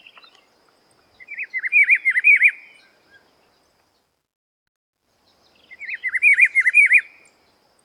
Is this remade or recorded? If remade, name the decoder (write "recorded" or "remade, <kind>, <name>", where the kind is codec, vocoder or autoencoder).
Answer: recorded